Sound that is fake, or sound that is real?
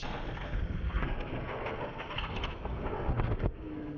fake